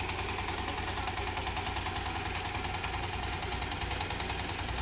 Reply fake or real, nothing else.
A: real